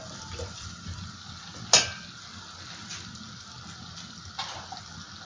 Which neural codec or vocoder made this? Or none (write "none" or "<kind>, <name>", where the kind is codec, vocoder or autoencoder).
none